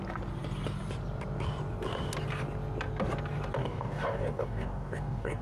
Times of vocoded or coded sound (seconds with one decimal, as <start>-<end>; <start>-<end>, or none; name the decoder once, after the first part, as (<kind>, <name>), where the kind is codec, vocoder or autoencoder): 3.6-5.4 (codec, DAC)